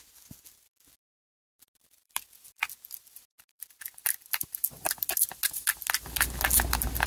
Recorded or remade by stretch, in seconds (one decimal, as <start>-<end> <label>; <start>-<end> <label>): 0.0-1.0 recorded; 1.0-5.3 remade; 5.3-7.1 recorded